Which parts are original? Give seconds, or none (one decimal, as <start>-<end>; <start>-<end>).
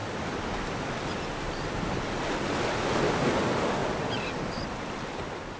0.0-5.6